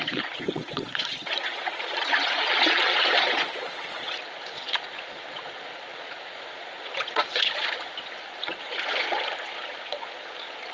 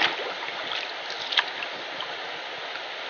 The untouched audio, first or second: second